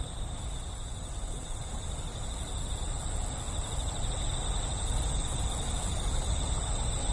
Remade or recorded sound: recorded